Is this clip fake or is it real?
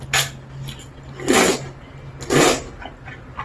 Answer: real